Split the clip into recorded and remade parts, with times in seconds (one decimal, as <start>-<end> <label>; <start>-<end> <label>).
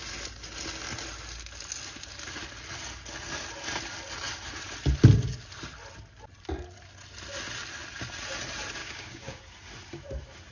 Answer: 0.0-8.8 recorded; 8.8-9.4 remade; 9.4-10.5 recorded